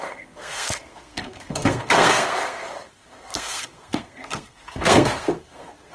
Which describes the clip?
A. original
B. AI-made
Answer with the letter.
B